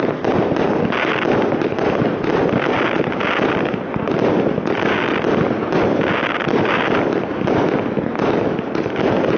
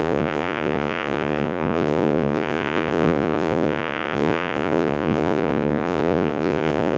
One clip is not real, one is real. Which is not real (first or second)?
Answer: second